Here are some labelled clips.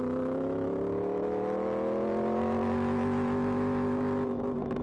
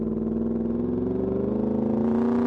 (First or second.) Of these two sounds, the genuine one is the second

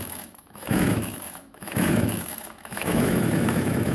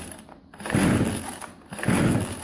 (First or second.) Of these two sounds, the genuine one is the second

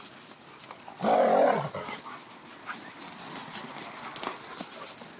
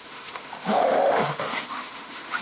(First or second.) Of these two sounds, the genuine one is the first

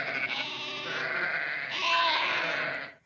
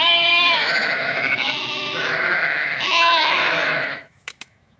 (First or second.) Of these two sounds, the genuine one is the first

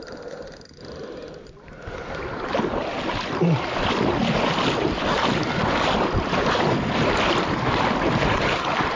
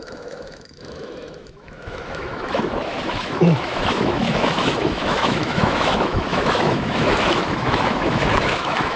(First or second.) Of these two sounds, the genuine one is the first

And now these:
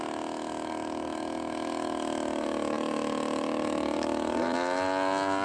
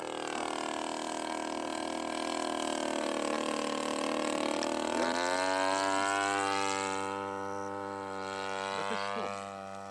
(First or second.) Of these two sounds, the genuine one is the second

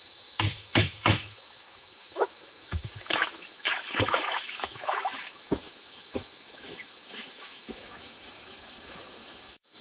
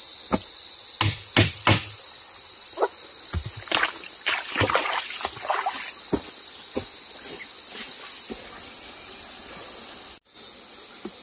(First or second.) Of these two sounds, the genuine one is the second